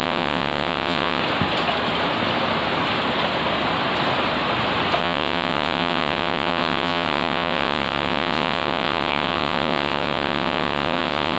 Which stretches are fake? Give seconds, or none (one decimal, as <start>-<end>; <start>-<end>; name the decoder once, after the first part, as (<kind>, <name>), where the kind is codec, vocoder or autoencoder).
0.0-1.2 (vocoder, WaveNeXt); 5.0-11.4